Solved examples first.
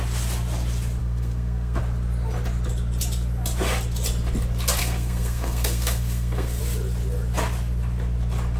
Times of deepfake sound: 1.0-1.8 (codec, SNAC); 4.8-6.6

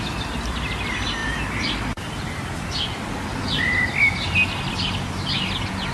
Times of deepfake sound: none

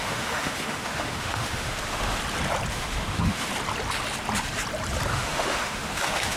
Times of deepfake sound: 0.0-2.2 (autoencoder, DAC-VAE); 2.7-3.5; 5.1-6.4

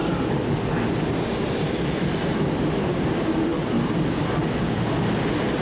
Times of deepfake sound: 0.0-0.7 (codec, DAC)

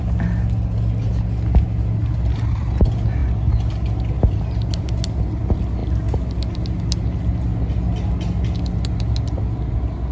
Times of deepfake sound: none